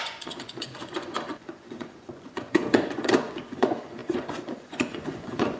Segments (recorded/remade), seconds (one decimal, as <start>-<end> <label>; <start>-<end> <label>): 0.0-5.6 remade